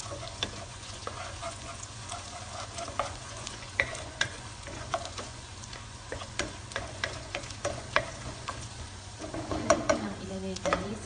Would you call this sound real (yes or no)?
no